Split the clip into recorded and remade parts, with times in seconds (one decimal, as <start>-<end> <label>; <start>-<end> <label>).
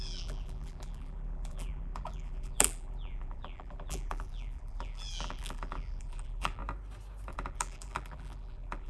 0.0-6.6 remade; 6.6-7.3 recorded; 7.3-8.9 remade